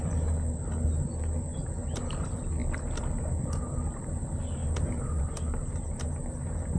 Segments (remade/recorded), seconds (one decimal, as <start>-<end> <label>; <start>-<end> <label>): 0.0-6.8 recorded